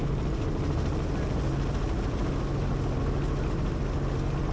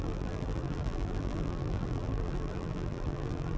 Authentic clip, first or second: first